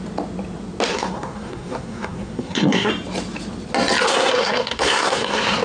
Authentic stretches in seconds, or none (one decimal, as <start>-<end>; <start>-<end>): 0.0-0.9; 2.9-4.1